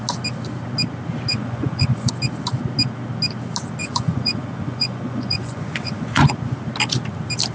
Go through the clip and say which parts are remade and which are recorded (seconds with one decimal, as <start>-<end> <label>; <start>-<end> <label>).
0.0-1.3 recorded; 1.3-2.1 remade; 2.1-3.8 recorded; 3.8-6.3 remade; 6.3-7.5 recorded

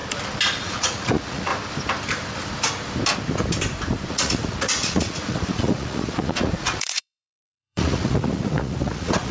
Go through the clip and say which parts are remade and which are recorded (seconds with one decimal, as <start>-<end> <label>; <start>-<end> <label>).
0.0-0.6 recorded; 0.6-1.5 remade; 1.5-4.1 recorded; 4.1-9.3 remade

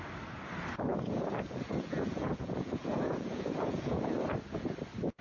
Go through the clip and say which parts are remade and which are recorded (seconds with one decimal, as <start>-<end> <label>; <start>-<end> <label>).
0.0-0.9 recorded; 0.9-4.0 remade; 4.0-5.2 recorded

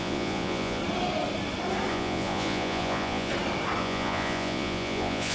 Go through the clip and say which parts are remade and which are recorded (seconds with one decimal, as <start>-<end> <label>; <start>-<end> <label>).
0.0-0.8 remade; 0.8-1.9 recorded; 1.9-3.3 remade; 3.3-3.8 recorded; 3.8-5.3 remade

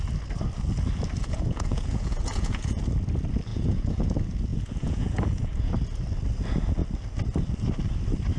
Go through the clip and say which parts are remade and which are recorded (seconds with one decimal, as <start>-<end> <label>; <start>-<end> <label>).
0.0-1.2 recorded; 1.2-2.8 remade; 2.8-3.5 recorded; 3.5-4.1 remade; 4.1-4.5 recorded; 4.5-5.7 remade; 5.7-8.4 recorded